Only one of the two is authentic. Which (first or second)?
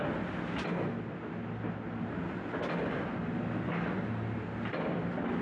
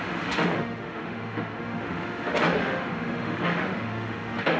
first